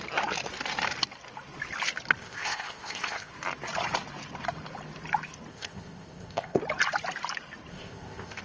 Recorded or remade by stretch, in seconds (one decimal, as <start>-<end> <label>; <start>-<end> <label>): 0.0-2.2 recorded; 2.2-3.3 remade; 3.3-5.5 recorded; 5.5-6.6 remade; 6.6-7.7 recorded; 7.7-8.4 remade